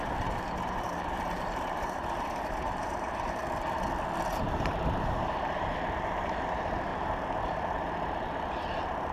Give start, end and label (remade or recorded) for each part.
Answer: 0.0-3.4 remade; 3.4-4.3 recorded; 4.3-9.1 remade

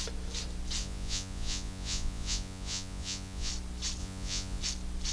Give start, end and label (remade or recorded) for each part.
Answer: 0.0-0.8 recorded; 0.8-3.5 remade; 3.5-4.0 recorded; 4.0-4.6 remade; 4.6-5.1 recorded

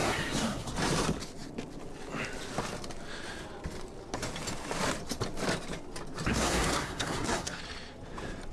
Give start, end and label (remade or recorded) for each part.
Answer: 0.0-0.7 remade; 0.7-6.3 recorded; 6.3-7.6 remade; 7.6-8.5 recorded

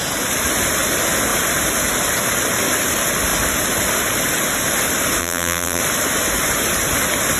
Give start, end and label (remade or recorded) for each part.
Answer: 0.0-5.2 recorded; 5.2-5.8 remade; 5.8-7.4 recorded

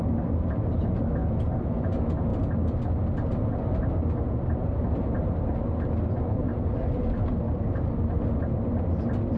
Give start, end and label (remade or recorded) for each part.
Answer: 0.0-9.4 recorded

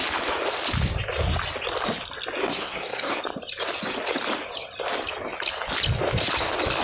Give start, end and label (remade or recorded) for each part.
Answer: 0.0-2.4 recorded; 2.4-3.1 remade; 3.1-6.8 recorded